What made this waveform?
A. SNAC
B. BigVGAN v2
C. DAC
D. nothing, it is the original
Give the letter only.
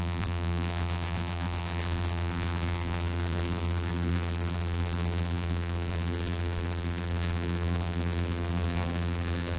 B